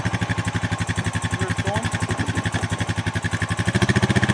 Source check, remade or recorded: recorded